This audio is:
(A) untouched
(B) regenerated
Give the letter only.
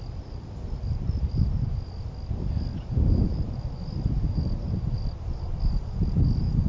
A